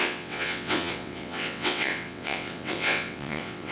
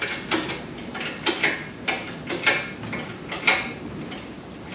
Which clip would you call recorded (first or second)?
second